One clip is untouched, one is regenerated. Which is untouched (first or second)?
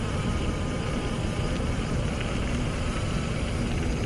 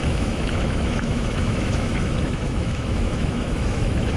first